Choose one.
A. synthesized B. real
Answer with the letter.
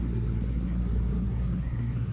A